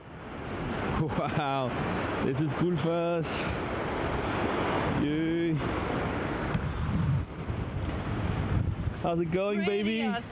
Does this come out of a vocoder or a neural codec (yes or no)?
no